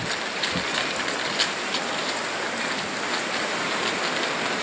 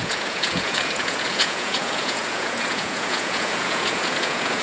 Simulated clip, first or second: second